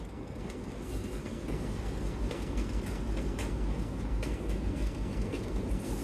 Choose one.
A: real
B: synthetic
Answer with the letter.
B